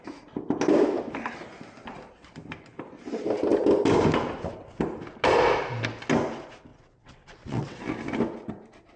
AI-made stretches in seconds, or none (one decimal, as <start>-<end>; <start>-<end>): 6.7-7.8